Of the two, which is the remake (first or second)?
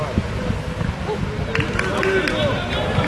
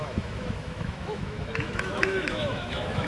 second